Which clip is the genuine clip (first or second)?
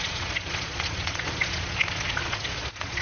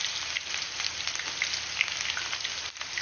second